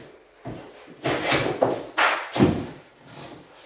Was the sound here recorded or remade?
recorded